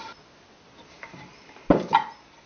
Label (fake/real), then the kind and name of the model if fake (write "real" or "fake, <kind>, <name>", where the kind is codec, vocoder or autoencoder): real